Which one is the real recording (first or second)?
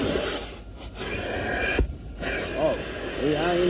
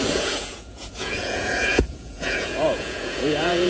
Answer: first